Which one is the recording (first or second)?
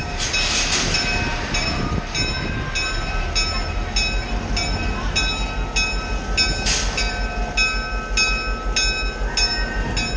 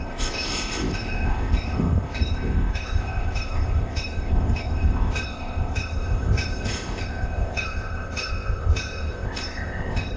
first